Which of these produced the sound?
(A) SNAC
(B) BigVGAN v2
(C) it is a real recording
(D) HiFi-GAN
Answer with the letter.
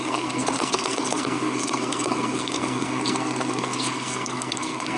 A